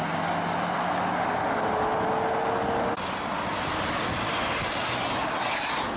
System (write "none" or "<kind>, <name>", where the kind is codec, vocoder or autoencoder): none